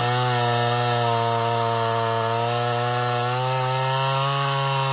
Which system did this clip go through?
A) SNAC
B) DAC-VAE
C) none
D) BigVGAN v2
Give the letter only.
C